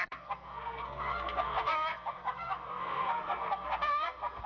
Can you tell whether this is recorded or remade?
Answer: remade